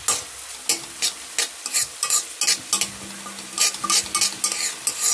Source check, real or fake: real